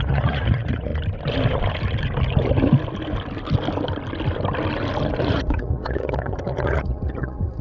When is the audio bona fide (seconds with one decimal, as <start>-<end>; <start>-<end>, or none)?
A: 0.9-5.2